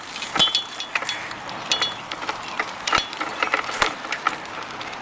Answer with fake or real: real